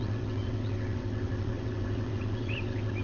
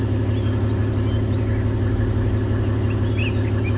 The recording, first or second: second